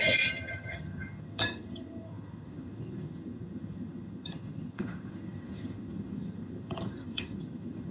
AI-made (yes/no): yes